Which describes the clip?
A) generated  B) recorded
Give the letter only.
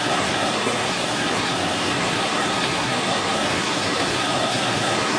A